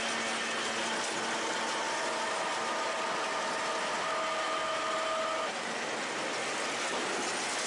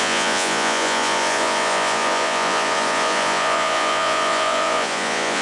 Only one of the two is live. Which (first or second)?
first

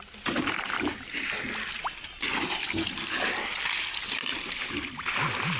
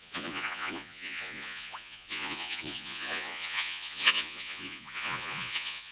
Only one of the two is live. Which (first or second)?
first